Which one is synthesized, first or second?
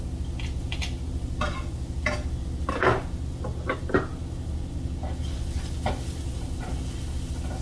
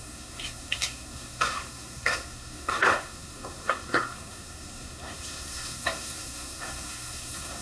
second